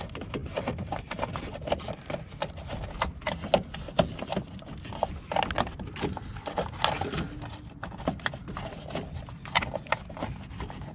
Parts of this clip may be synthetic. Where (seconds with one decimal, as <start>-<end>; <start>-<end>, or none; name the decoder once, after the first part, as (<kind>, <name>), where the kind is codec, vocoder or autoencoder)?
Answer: none